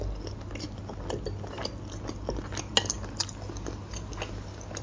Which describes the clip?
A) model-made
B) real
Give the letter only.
B